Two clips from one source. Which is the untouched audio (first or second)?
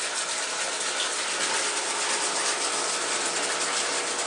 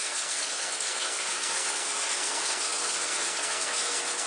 first